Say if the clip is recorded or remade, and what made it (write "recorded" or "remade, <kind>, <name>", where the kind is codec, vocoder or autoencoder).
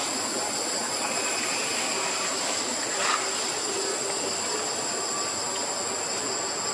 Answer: recorded